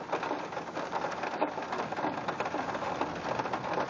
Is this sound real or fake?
real